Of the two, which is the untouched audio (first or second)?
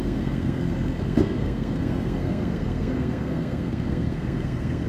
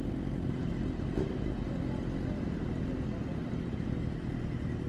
second